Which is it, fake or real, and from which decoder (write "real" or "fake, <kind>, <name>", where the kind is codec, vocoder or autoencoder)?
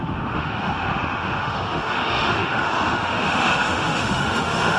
fake, autoencoder, DAC-VAE